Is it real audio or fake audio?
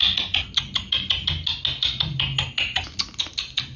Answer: real